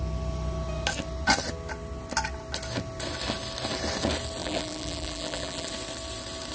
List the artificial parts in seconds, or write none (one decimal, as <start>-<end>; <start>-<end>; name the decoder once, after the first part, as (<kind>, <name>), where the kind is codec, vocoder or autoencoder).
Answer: 4.4-5.7 (vocoder, BigVGAN v2)